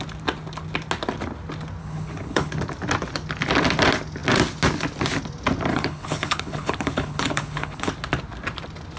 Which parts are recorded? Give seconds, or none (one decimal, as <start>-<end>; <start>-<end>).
0.0-1.8; 2.5-5.7; 7.9-9.0